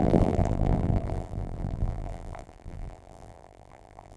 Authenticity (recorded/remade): remade